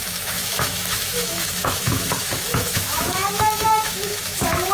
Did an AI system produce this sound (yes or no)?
yes